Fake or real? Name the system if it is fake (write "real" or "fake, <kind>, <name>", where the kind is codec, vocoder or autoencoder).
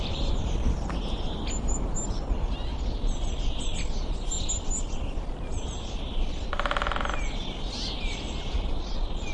real